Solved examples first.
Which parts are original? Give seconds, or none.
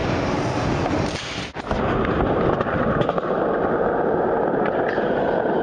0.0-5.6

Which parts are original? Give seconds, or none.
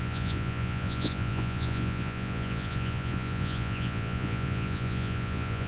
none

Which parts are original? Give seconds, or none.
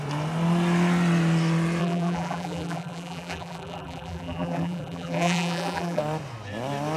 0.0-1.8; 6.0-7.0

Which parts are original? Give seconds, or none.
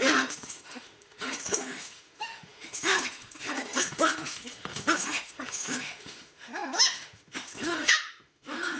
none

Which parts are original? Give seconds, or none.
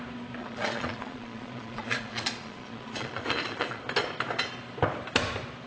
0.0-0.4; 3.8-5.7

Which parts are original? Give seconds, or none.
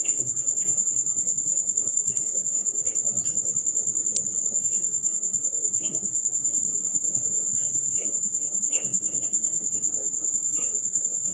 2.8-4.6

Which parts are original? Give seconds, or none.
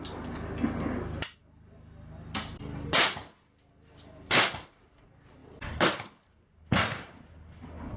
0.0-8.0